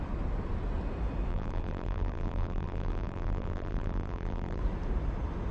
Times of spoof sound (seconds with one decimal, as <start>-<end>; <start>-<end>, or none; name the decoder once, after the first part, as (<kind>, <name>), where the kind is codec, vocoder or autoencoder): 1.3-4.6 (vocoder, BigVGAN v2)